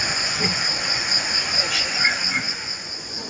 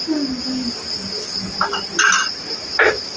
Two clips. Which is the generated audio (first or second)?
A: first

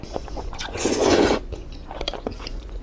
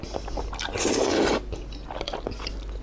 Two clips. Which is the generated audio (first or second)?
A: first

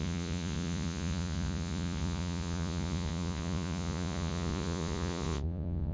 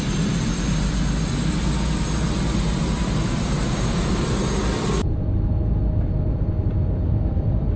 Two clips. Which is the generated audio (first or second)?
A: first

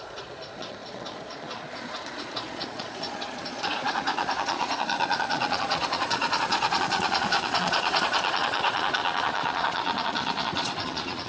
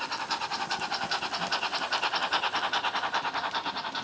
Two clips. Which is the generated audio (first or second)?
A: first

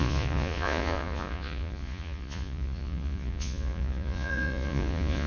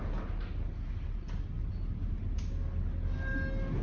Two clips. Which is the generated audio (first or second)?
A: first